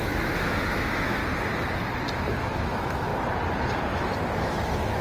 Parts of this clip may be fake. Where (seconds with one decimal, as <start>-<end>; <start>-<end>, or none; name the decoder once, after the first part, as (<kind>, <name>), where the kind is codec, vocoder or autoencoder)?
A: 0.0-1.2 (autoencoder, DAC-VAE); 2.4-3.1; 4.4-5.0